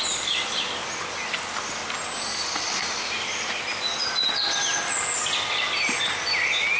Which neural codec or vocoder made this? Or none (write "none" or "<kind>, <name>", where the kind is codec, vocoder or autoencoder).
none